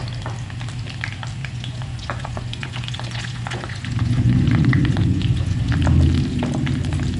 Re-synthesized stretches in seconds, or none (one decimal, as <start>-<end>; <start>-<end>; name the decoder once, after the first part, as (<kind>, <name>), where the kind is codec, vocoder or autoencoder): 1.4-5.7 (vocoder, Vocos)